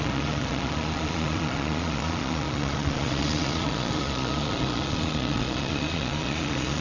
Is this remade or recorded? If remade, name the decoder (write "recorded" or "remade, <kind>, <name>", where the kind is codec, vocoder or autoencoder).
remade, vocoder, Vocos